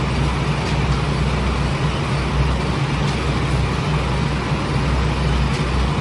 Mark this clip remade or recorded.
recorded